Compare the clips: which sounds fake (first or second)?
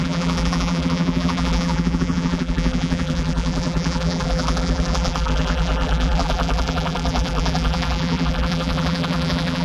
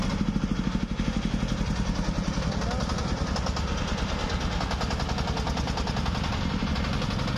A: first